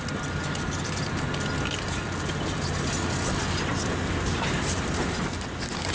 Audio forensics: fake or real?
real